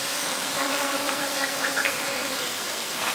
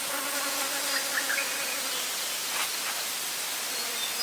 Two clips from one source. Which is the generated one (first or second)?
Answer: first